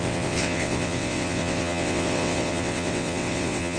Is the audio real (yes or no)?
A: no